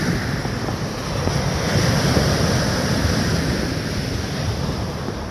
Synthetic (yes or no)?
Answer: no